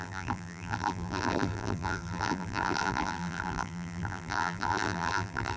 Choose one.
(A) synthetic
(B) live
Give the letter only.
A